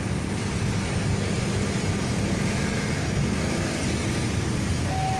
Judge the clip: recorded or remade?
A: recorded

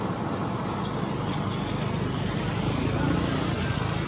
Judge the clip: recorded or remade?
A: recorded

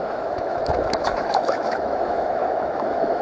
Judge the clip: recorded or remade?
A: remade